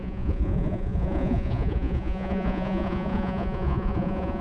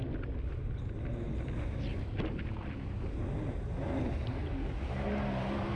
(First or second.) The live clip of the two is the second